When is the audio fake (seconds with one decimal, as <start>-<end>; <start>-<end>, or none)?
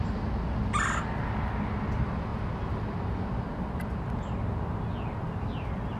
none